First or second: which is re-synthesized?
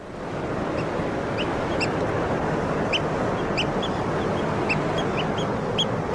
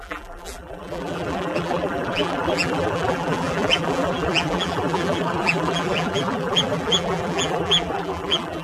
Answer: second